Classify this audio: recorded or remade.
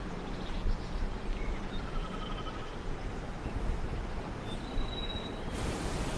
recorded